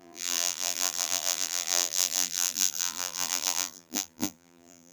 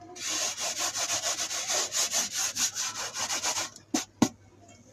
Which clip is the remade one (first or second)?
first